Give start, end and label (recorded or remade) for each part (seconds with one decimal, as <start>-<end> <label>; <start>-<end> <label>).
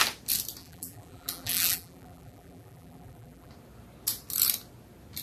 0.0-0.6 recorded; 0.6-3.5 remade; 3.5-5.2 recorded